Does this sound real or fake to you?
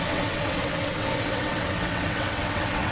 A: fake